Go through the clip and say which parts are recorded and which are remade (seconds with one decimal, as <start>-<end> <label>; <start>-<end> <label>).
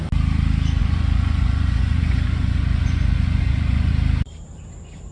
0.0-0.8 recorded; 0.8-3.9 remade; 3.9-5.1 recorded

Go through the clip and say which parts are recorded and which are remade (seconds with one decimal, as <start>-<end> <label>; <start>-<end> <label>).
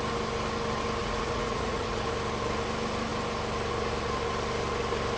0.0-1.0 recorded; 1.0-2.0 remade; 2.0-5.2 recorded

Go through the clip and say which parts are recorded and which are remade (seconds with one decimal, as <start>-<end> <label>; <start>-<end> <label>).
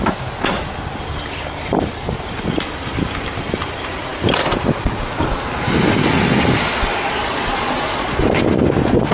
0.0-7.2 recorded; 7.2-8.2 remade; 8.2-9.1 recorded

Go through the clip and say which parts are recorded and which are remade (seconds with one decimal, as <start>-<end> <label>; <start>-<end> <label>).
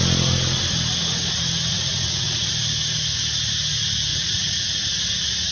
0.0-1.7 recorded; 1.7-2.5 remade; 2.5-4.1 recorded; 4.1-4.8 remade; 4.8-5.5 recorded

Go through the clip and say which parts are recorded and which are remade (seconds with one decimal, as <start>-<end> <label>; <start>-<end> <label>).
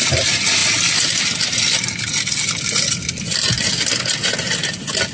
0.0-5.1 recorded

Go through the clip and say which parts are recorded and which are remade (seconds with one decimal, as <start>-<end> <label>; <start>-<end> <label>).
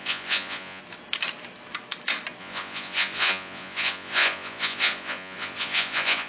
0.0-0.8 remade; 0.8-2.4 recorded; 2.4-6.3 remade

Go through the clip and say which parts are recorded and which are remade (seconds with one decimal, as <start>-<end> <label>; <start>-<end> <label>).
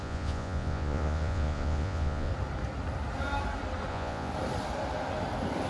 0.0-2.3 remade; 2.3-3.9 recorded; 3.9-4.3 remade; 4.3-5.7 recorded